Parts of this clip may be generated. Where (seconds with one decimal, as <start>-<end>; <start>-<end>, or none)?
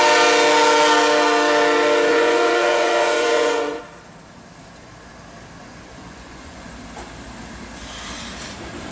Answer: 2.1-3.8; 5.6-6.7